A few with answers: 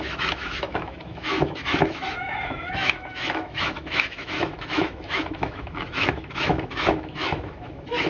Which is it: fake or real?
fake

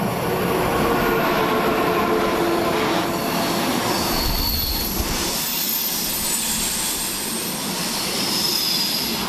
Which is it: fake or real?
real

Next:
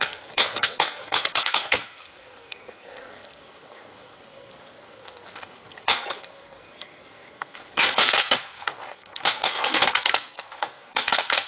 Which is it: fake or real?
fake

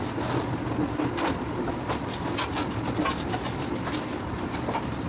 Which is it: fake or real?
real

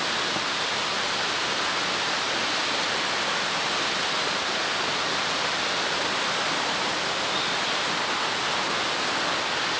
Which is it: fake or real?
real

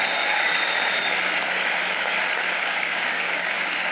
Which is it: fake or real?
fake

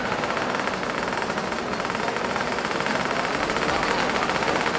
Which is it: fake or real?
real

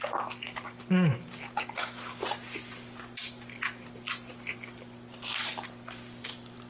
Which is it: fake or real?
real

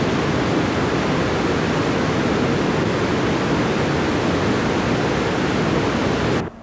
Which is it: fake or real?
real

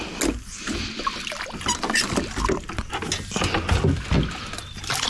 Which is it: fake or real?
real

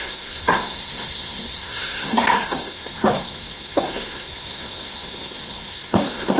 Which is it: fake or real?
fake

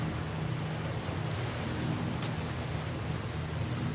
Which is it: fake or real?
real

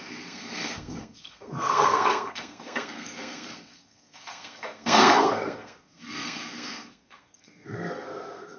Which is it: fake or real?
fake